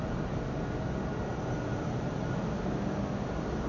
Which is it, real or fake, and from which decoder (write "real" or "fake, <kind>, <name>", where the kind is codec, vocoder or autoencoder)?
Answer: real